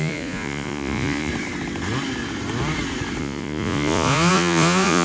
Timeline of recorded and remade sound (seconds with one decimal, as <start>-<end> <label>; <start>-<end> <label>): 0.0-1.3 remade; 1.3-3.2 recorded; 3.2-5.0 remade